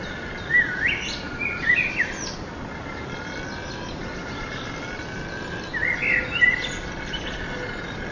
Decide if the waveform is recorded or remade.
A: recorded